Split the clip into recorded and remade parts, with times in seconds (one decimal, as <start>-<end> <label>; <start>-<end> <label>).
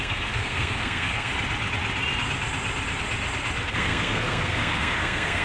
0.0-1.3 remade; 1.3-3.7 recorded; 3.7-5.4 remade